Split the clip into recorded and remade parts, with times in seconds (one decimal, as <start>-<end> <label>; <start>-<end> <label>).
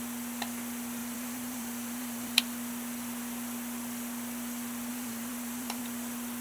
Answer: 0.0-1.0 recorded; 1.0-2.4 remade; 2.4-4.9 recorded; 4.9-5.8 remade; 5.8-6.4 recorded